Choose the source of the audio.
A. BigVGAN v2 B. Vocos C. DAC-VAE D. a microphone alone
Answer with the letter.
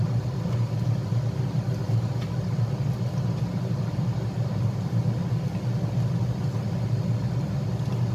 D